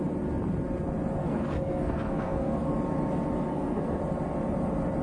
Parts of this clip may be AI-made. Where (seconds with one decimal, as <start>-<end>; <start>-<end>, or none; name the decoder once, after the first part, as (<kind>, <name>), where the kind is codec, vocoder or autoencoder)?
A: 1.2-2.7 (codec, SNAC); 3.5-4.0